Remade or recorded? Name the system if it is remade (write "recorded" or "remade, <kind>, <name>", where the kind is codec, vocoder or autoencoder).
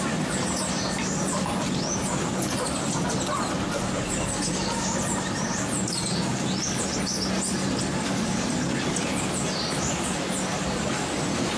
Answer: recorded